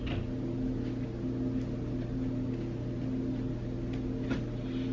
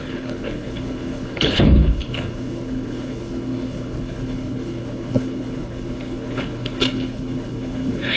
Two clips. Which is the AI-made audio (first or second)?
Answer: second